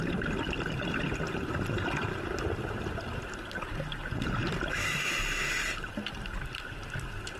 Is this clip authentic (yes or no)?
yes